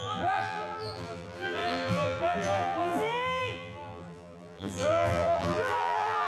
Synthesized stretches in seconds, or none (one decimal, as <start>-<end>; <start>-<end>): 0.0-6.3